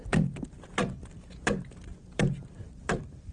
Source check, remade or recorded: remade